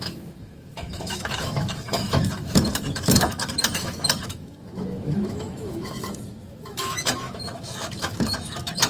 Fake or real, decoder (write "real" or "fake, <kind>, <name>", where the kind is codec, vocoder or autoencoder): fake, autoencoder, DAC-VAE